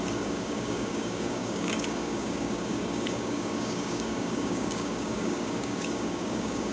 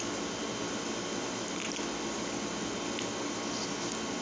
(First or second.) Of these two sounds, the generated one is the first